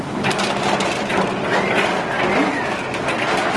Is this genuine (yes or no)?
yes